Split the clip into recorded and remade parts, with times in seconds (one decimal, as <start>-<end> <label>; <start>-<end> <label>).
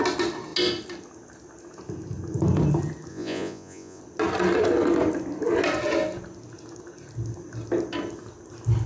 0.0-3.1 recorded; 3.1-4.0 remade; 4.0-8.9 recorded